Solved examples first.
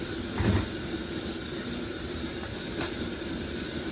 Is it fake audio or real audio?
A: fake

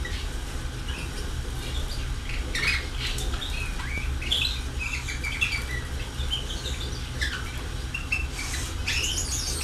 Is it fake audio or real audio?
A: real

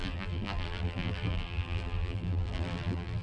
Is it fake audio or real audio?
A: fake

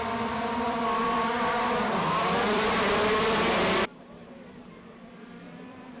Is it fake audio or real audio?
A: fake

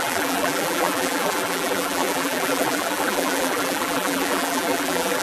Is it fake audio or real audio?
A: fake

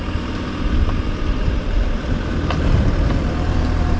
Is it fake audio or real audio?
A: fake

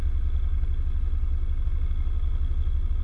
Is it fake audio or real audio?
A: real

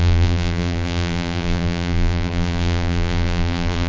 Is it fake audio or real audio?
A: fake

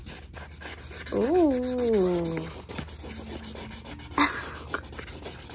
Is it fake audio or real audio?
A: real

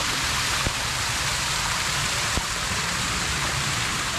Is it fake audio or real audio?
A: fake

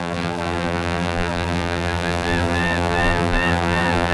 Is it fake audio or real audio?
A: fake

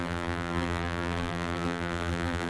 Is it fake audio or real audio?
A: fake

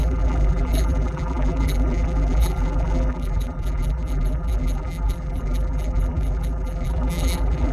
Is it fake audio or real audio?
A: fake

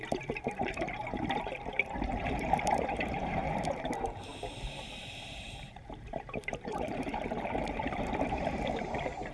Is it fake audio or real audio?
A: fake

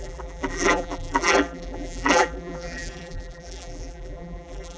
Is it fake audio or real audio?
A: fake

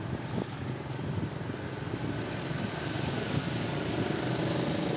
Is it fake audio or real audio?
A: real